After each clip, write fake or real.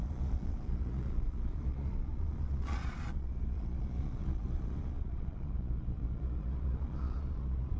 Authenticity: fake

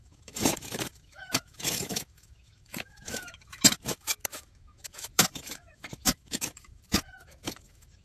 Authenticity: fake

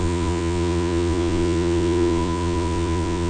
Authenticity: fake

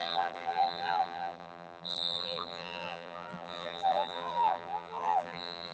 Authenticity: fake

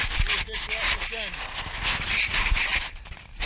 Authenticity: real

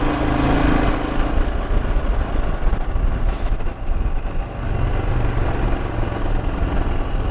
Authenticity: real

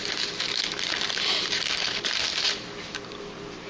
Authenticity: real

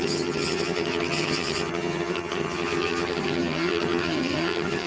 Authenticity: fake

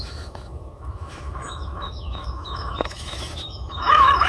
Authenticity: fake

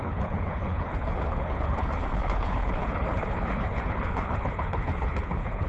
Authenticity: fake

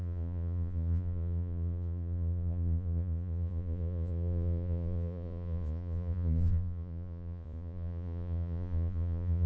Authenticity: fake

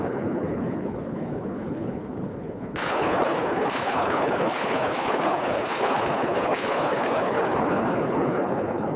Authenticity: fake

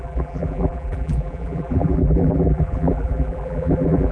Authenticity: fake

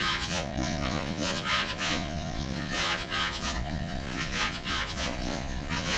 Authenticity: fake